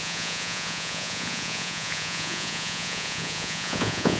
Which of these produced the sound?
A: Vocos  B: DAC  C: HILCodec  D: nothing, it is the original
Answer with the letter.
A